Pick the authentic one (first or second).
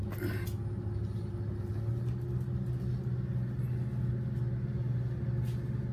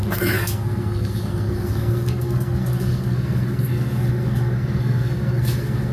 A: first